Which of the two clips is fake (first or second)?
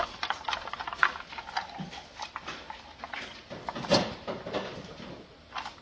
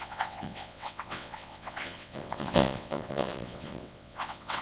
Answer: second